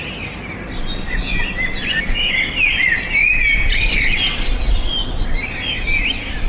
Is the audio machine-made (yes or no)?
no